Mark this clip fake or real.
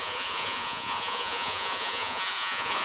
fake